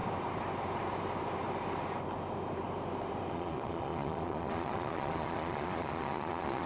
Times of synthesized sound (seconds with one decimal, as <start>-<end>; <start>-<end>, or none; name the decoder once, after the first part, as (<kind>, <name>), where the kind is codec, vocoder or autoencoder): 3.3-6.7 (vocoder, Vocos)